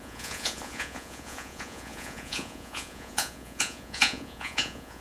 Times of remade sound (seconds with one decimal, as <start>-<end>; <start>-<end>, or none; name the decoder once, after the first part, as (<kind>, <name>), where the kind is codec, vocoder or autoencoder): 0.0-5.0 (vocoder, Vocos)